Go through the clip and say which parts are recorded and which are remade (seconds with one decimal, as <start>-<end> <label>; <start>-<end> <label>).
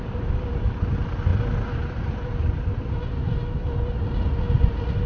0.0-5.1 recorded